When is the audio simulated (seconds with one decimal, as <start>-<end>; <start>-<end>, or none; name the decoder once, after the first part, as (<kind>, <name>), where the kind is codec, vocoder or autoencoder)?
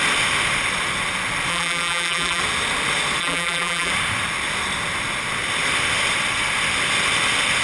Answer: 1.5-2.4 (vocoder, BigVGAN v2); 3.2-3.9